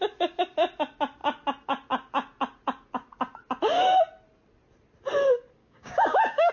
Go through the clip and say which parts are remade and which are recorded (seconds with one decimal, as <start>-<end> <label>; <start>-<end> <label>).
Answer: 0.0-5.6 recorded; 5.6-6.5 remade